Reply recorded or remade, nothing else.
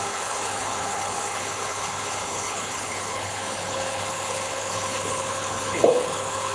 remade